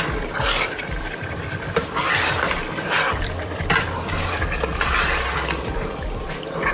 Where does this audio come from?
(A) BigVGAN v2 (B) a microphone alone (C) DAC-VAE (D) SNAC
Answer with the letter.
A